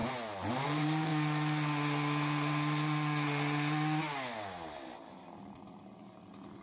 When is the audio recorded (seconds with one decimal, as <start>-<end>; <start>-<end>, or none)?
0.0-0.5; 1.1-5.1